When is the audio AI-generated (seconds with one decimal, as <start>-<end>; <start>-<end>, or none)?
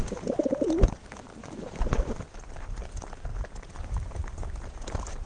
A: 1.0-1.8